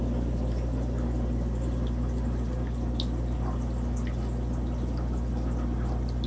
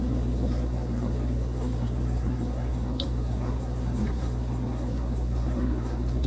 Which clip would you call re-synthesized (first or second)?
second